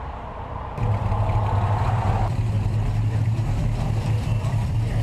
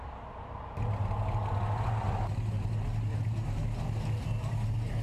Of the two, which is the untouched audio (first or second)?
second